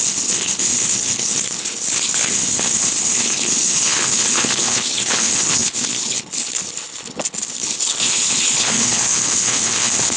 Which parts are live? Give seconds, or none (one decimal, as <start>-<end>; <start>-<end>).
none